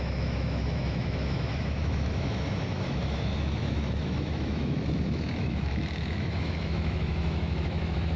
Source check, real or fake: fake